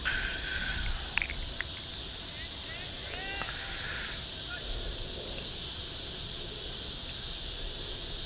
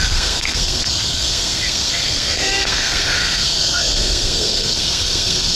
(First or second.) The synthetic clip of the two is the second